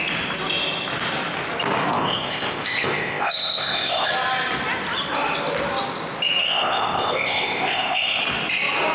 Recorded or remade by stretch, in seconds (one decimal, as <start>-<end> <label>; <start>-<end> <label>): 0.0-1.9 recorded; 1.9-4.1 remade; 4.1-6.4 recorded; 6.4-8.2 remade; 8.2-8.9 recorded